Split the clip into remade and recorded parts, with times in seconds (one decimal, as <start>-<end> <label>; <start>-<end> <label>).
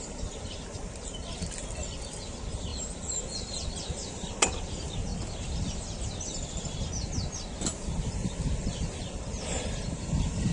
0.0-2.7 recorded; 2.7-4.5 remade; 4.5-5.1 recorded; 5.1-6.5 remade; 6.5-8.2 recorded; 8.2-10.0 remade; 10.0-10.5 recorded